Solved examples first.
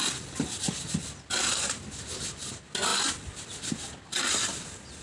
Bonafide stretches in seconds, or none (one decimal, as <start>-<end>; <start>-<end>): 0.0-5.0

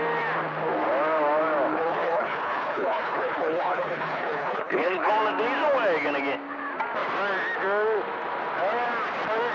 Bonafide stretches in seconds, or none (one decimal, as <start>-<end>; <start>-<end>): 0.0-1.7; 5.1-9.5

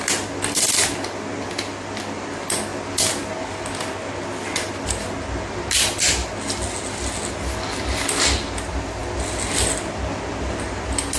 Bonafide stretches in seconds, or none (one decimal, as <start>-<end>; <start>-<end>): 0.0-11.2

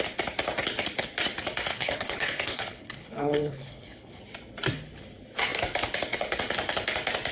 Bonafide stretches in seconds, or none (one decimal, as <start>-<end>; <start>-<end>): 0.0-1.7; 4.2-7.3

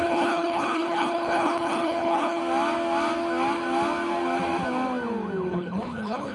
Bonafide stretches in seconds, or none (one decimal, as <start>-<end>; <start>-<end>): 2.4-5.5

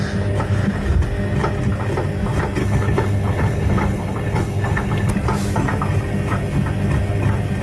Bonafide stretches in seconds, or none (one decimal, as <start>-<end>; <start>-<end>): 0.0-2.6; 5.1-7.6